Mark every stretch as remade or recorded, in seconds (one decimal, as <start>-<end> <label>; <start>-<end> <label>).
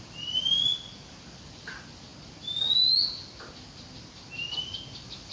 0.0-5.3 recorded